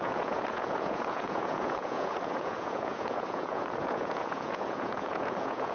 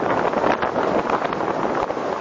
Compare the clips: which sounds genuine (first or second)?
second